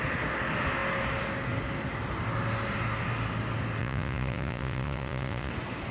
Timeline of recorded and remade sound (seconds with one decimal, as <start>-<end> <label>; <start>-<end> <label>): 0.0-3.8 recorded; 3.8-5.5 remade; 5.5-5.9 recorded